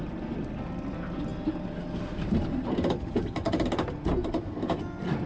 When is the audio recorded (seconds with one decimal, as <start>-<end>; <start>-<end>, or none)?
0.0-5.3